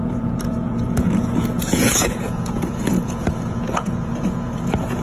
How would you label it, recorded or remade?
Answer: remade